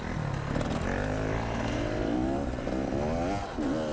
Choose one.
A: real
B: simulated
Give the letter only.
A